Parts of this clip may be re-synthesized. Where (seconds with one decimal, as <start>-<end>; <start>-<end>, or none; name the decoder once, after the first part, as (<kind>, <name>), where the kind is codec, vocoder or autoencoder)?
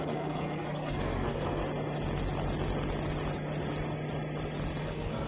0.0-1.6 (codec, SNAC); 4.8-5.3